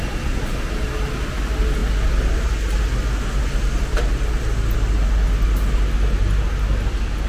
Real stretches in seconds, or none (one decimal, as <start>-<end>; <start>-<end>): 0.0-7.3